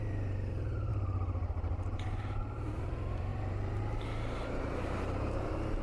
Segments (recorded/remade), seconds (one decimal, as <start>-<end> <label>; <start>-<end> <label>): 0.0-0.9 remade; 0.9-1.5 recorded; 1.5-5.8 remade